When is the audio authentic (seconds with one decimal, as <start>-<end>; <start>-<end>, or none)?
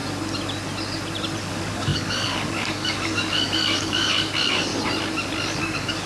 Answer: 0.0-1.4; 4.7-5.6